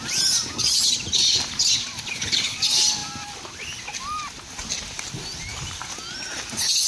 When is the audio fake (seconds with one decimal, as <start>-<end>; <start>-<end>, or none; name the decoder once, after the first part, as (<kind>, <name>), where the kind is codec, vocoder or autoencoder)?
none

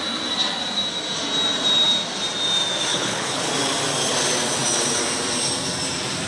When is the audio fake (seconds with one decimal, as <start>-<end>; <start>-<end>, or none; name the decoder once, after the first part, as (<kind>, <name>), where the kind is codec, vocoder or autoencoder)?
2.9-3.5 (codec, HILCodec)

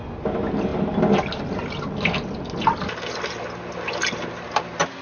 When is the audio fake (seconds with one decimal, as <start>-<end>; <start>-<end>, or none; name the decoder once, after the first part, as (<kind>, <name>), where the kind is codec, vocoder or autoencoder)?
none